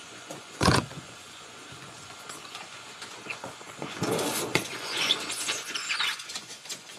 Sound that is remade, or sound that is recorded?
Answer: remade